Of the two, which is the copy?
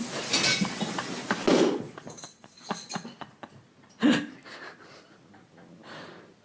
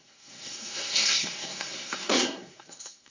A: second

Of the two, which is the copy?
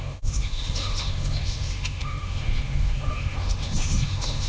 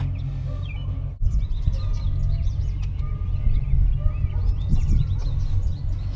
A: first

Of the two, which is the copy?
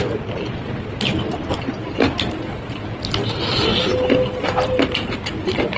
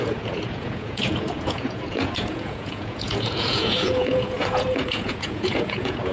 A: second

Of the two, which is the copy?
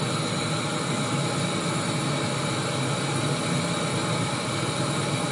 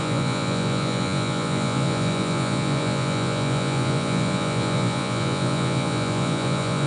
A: second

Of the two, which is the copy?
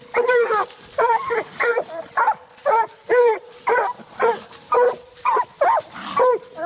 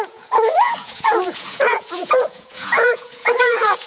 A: second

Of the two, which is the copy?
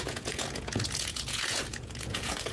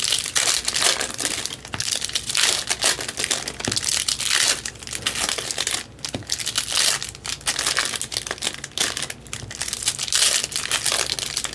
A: first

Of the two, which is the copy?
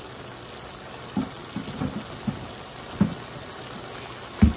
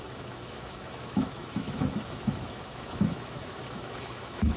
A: second